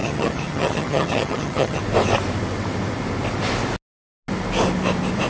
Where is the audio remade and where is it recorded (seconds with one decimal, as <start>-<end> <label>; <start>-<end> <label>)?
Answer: 0.0-1.8 remade; 1.8-5.3 recorded